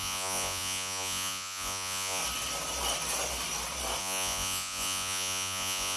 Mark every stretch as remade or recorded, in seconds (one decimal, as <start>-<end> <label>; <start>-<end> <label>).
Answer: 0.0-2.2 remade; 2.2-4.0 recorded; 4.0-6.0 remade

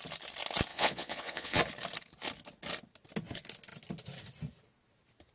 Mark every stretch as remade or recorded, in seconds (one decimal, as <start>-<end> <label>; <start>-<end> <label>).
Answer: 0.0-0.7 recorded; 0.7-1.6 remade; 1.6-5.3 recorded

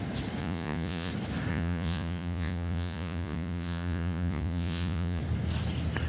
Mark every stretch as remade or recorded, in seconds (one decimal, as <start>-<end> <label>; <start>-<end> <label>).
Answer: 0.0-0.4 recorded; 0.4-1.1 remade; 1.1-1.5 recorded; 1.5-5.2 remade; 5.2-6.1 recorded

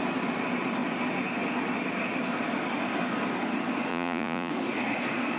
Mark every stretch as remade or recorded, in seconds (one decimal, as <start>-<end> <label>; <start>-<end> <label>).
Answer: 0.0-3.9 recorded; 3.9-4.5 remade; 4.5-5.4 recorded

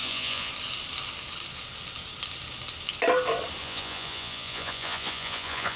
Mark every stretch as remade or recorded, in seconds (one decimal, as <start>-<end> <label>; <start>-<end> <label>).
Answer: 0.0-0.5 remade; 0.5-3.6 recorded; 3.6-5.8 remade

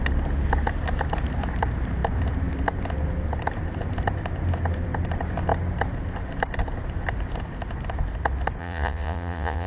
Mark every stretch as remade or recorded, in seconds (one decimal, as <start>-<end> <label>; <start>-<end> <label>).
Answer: 0.0-8.6 recorded; 8.6-9.7 remade